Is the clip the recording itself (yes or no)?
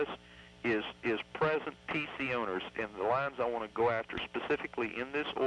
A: yes